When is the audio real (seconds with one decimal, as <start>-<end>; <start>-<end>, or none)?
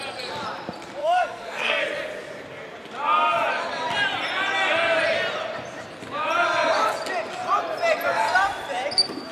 0.0-1.0; 1.8-9.3